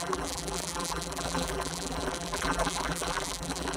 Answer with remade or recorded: remade